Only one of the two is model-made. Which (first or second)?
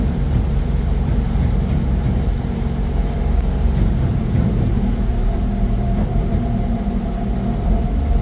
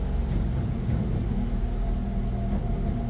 first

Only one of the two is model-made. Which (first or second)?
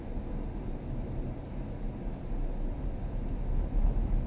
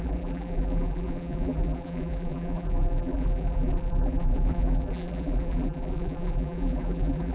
second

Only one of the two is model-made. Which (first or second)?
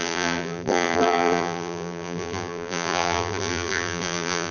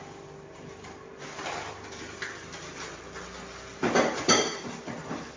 first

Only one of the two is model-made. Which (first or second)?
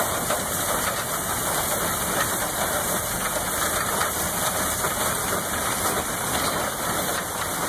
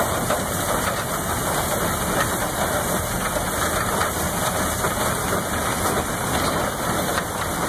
first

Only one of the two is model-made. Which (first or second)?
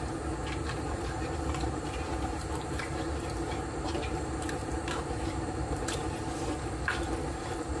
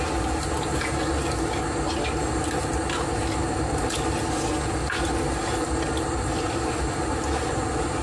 first